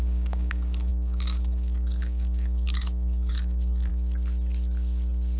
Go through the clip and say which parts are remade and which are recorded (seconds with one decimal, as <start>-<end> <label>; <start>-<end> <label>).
0.0-3.9 remade; 3.9-5.4 recorded